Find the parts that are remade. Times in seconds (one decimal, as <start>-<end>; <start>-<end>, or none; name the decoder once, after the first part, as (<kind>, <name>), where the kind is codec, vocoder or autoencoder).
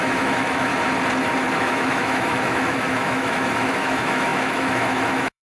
0.0-0.7 (autoencoder, DAC-VAE); 1.5-5.5